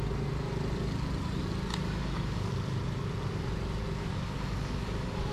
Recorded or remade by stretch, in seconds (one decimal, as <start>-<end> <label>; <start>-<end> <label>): 0.0-1.7 recorded; 1.7-2.5 remade; 2.5-4.0 recorded; 4.0-5.3 remade